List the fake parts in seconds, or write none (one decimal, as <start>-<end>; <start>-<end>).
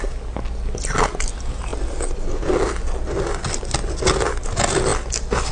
none